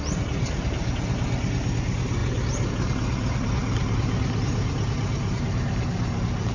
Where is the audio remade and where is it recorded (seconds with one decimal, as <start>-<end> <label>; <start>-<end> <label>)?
0.0-6.5 recorded